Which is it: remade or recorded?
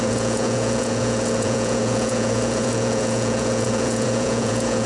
remade